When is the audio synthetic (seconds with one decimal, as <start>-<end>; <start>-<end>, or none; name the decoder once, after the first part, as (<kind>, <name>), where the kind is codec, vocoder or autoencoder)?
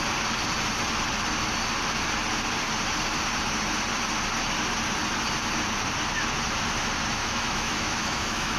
7.2-8.6 (autoencoder, DAC-VAE)